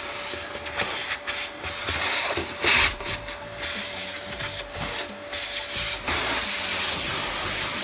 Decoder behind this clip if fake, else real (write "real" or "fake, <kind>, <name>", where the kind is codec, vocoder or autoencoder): real